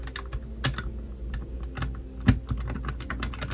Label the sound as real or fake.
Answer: real